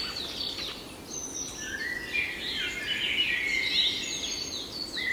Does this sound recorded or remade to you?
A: recorded